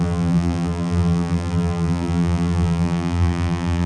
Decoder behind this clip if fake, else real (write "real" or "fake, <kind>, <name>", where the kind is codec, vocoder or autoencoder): fake, vocoder, BigVGAN v2